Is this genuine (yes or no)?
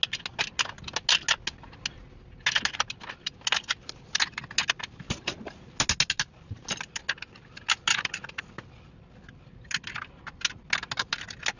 yes